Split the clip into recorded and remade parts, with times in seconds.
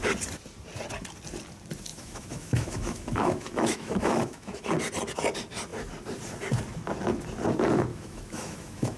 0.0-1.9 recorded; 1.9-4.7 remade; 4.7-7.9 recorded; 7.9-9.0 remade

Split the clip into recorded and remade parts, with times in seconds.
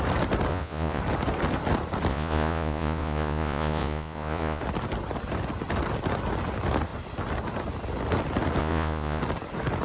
0.0-0.5 recorded; 0.5-1.0 remade; 1.0-2.1 recorded; 2.1-4.6 remade; 4.6-8.6 recorded; 8.6-9.2 remade; 9.2-9.8 recorded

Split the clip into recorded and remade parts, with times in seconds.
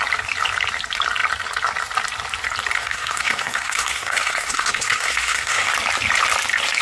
0.0-2.8 recorded; 2.8-5.7 remade; 5.7-6.8 recorded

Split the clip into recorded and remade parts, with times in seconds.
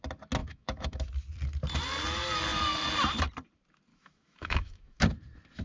0.0-0.4 recorded; 0.4-1.0 remade; 1.0-3.9 recorded; 3.9-5.0 remade; 5.0-5.6 recorded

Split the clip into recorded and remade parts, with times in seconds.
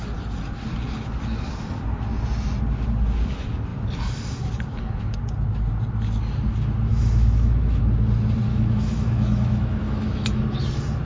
0.0-6.9 recorded; 6.9-7.8 remade; 7.8-8.5 recorded; 8.5-10.4 remade; 10.4-11.1 recorded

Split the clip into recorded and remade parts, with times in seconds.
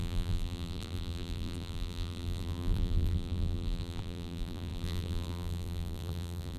0.0-6.6 remade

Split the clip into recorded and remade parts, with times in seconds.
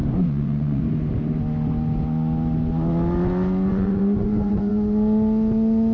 0.0-0.8 remade; 0.8-3.7 recorded; 3.7-4.7 remade; 4.7-5.9 recorded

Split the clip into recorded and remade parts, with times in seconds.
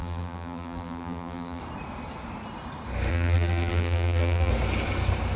0.0-1.6 remade; 1.6-3.1 recorded; 3.1-4.5 remade; 4.5-5.4 recorded